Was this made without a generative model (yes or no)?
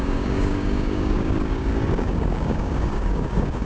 no